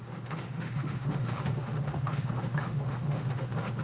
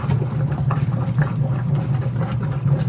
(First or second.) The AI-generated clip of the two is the first